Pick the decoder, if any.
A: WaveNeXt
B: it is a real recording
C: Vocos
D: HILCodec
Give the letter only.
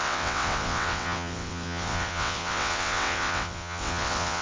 A